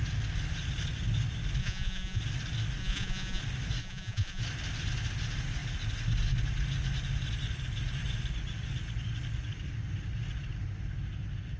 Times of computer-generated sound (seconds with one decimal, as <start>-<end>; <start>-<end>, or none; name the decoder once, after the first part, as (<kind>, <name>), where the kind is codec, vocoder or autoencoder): 1.6-2.2 (vocoder, Vocos); 2.8-3.4; 3.8-4.4